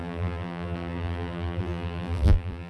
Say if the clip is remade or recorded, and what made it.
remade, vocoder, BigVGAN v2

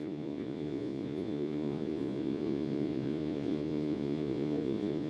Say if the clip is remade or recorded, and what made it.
remade, vocoder, Vocos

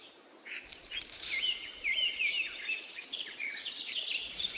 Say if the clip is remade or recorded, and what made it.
remade, vocoder, BigVGAN v2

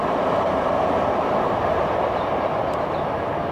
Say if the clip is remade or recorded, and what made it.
recorded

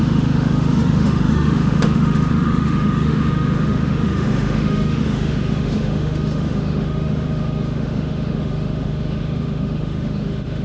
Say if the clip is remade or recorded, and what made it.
remade, autoencoder, DAC-VAE